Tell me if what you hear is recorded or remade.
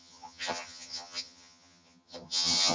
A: remade